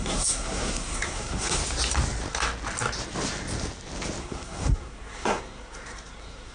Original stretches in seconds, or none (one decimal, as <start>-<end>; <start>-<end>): 1.6-4.2